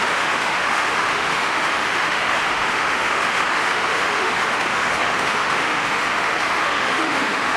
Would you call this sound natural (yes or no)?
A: no